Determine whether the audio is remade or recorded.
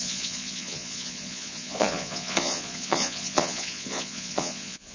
remade